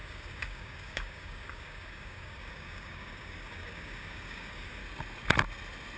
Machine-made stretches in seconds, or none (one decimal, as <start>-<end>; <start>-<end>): 0.0-4.8